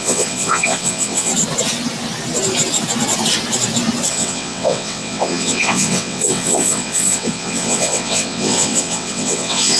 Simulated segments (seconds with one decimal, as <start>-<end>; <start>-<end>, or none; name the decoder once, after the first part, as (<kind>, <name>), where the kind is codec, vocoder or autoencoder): 0.0-1.3 (vocoder, WaveNeXt); 4.1-9.8